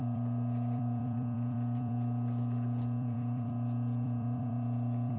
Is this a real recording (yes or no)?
no